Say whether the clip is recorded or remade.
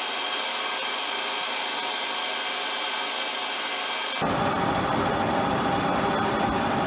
recorded